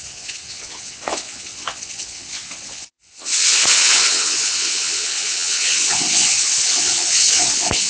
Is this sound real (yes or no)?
no